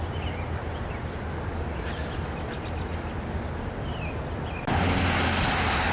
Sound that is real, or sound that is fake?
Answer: real